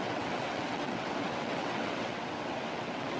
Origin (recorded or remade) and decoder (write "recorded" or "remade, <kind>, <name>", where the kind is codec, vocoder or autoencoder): remade, vocoder, WaveNeXt